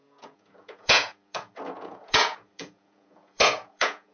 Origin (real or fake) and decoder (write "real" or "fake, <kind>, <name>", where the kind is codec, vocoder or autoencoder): fake, vocoder, Vocos